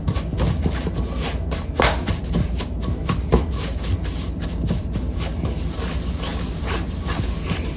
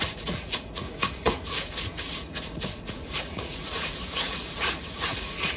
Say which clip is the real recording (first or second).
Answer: first